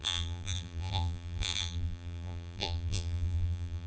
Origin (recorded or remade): remade